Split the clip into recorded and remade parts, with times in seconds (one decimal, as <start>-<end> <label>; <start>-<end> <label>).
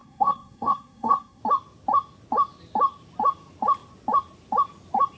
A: 0.0-1.4 remade; 1.4-5.2 recorded